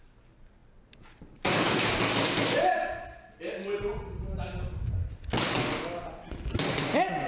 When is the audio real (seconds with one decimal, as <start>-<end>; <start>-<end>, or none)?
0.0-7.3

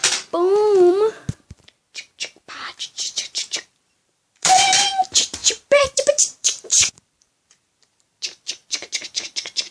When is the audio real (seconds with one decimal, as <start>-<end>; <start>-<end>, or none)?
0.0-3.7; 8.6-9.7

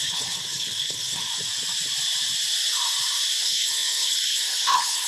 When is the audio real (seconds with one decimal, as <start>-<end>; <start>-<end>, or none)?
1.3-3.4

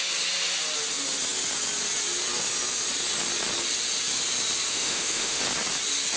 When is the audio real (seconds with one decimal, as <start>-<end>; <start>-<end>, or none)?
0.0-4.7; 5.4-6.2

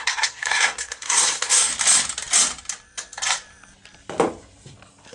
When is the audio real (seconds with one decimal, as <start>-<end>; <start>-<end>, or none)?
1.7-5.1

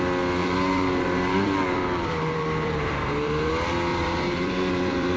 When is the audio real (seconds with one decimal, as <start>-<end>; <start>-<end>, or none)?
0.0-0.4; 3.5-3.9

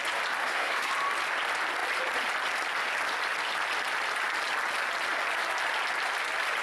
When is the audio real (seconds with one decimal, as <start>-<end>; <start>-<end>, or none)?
0.0-0.4; 0.9-6.6